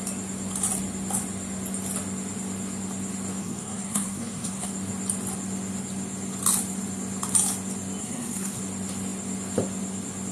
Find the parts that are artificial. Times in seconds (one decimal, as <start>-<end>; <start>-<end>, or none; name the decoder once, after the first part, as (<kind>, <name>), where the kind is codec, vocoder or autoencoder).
3.4-4.7 (codec, SNAC); 8.0-8.6